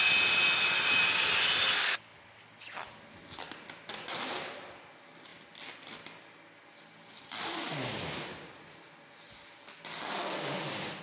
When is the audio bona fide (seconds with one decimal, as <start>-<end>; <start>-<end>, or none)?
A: 0.0-11.0